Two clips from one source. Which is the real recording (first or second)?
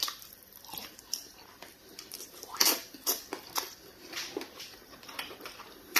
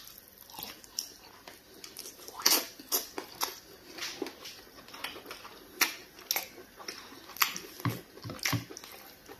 second